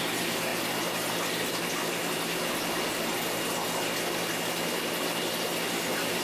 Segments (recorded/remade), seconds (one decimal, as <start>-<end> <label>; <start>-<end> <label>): 0.0-0.5 remade; 0.5-1.2 recorded; 1.2-2.0 remade; 2.0-5.7 recorded; 5.7-6.2 remade